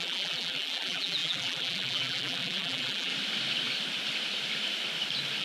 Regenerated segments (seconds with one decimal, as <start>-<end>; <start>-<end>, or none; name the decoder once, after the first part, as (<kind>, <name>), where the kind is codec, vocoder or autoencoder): 0.0-3.1 (vocoder, BigVGAN v2)